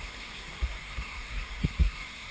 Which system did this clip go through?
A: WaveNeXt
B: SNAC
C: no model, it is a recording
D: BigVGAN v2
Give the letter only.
B